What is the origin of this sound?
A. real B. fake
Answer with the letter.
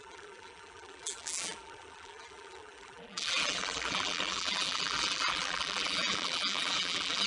B